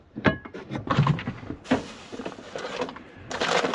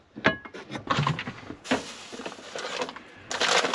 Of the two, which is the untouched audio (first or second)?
second